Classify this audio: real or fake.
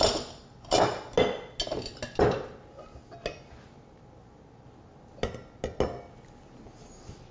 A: real